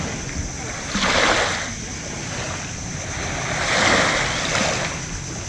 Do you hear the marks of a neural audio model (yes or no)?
no